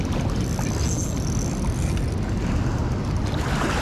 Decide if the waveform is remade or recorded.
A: recorded